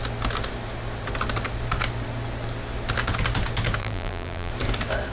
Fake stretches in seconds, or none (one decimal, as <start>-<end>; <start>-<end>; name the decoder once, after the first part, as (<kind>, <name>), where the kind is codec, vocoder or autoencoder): 3.8-4.5 (vocoder, BigVGAN v2)